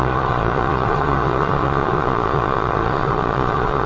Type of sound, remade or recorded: remade